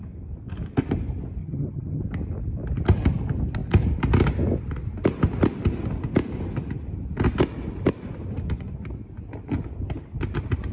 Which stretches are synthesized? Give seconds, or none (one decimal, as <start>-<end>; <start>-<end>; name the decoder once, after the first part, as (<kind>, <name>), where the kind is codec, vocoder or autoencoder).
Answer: 1.4-2.0 (vocoder, HiFi-GAN)